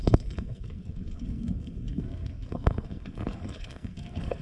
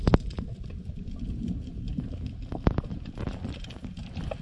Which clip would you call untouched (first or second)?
second